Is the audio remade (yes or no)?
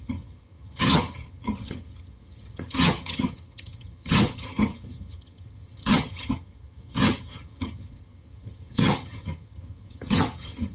yes